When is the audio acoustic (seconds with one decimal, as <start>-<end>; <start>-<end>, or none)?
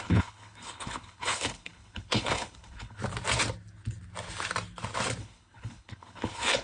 3.0-5.2